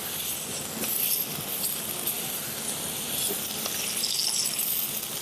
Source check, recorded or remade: recorded